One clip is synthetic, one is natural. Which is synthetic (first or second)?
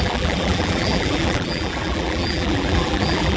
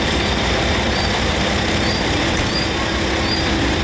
first